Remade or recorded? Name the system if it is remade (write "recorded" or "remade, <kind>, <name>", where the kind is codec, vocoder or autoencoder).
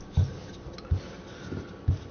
recorded